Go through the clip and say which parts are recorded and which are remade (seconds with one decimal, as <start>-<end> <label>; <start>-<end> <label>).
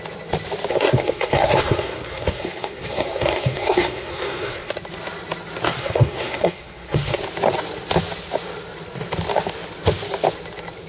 0.0-0.7 recorded; 0.7-4.7 remade; 4.7-5.8 recorded; 5.8-7.2 remade; 7.2-10.9 recorded